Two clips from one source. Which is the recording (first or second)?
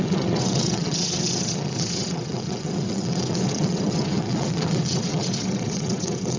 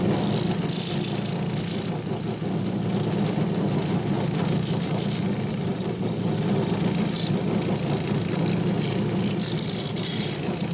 second